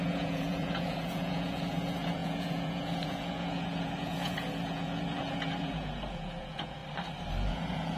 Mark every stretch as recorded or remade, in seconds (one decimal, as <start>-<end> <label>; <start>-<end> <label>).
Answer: 0.0-6.8 remade; 6.8-7.5 recorded; 7.5-8.0 remade